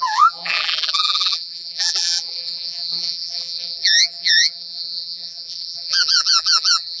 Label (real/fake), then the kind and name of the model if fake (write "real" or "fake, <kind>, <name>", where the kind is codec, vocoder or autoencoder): fake, vocoder, BigVGAN v2